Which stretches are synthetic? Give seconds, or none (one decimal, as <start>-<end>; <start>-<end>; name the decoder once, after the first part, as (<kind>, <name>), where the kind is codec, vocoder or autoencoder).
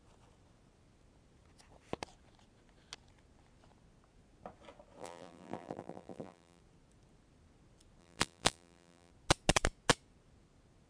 5.0-6.6 (vocoder, BigVGAN v2); 8.0-9.1